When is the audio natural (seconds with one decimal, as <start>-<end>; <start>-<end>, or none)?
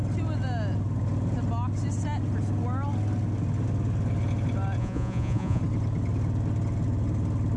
0.0-4.8; 5.6-7.6